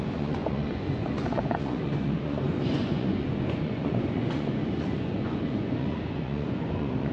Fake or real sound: fake